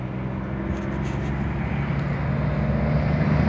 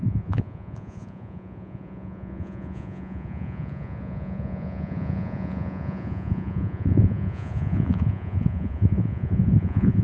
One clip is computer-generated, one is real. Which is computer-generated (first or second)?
second